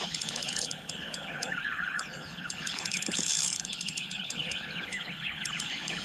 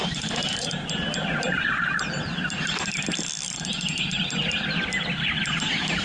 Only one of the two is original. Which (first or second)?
second